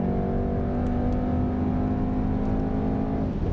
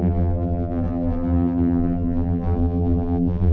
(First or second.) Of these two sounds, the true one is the first